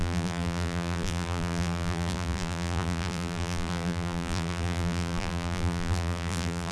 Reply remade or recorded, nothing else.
remade